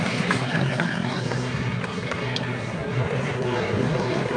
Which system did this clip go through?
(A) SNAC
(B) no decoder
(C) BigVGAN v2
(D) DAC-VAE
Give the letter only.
A